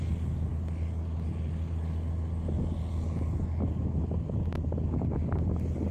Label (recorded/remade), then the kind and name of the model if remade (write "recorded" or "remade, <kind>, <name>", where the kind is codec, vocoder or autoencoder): recorded